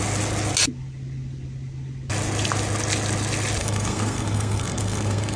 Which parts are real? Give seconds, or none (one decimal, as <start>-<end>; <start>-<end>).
0.0-3.6